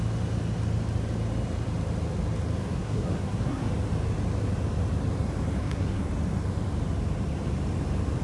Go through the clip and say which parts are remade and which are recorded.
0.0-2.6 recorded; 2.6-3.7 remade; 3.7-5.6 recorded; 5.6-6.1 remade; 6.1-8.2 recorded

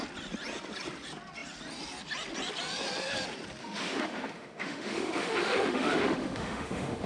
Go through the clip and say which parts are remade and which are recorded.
0.0-3.6 recorded; 3.6-7.1 remade

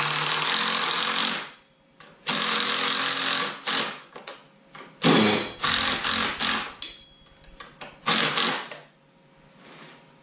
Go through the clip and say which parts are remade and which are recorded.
0.0-1.2 recorded; 1.2-2.7 remade; 2.7-10.2 recorded

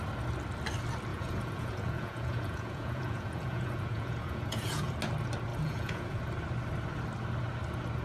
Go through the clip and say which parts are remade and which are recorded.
0.0-1.1 recorded; 1.1-5.0 remade; 5.0-5.5 recorded; 5.5-6.2 remade; 6.2-8.0 recorded

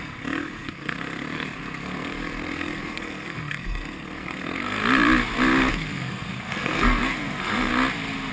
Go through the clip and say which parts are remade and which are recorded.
0.0-4.8 remade; 4.8-5.7 recorded; 5.7-7.7 remade; 7.7-8.3 recorded

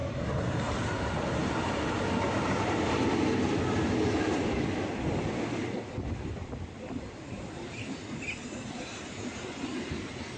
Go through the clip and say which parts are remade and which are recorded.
0.0-10.4 recorded

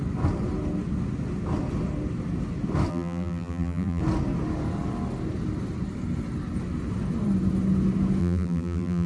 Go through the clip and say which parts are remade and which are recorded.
0.0-2.9 recorded; 2.9-4.0 remade; 4.0-8.2 recorded; 8.2-9.1 remade

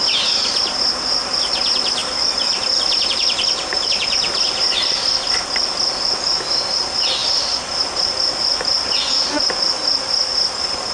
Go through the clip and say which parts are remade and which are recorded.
0.0-2.0 recorded; 2.0-5.7 remade; 5.7-7.2 recorded; 7.2-9.6 remade; 9.6-10.9 recorded